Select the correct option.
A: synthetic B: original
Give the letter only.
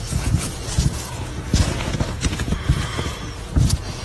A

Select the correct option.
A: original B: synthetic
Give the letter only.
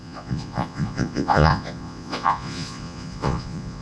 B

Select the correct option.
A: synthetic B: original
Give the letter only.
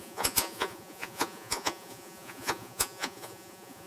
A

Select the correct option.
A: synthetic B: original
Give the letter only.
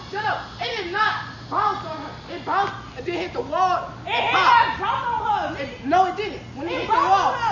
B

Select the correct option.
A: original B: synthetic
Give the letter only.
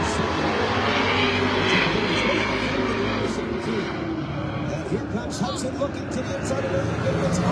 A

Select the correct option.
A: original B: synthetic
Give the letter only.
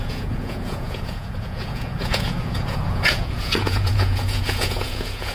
B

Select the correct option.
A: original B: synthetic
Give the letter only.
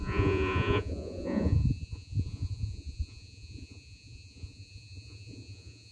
B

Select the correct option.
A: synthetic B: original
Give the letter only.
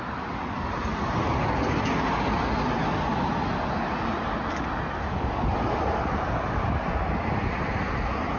B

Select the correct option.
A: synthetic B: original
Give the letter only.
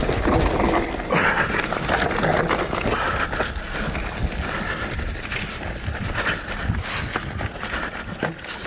B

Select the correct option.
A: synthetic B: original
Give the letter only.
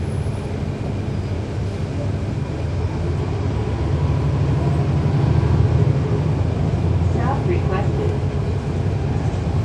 B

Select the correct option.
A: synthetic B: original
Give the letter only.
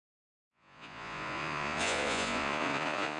A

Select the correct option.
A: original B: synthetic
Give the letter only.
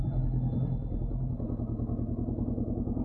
A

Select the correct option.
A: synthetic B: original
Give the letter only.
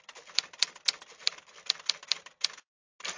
B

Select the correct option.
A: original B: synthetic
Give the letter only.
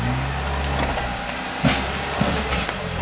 A